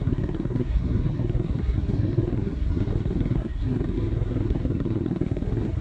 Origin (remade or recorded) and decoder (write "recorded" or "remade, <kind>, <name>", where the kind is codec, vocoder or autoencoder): remade, codec, SNAC